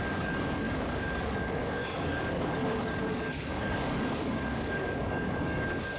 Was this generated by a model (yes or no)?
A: yes